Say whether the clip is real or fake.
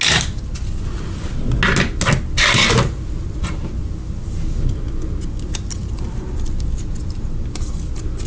real